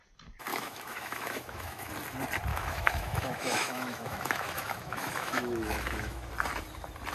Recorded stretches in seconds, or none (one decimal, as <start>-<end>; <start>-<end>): 0.0-0.5; 1.9-2.5; 6.3-7.1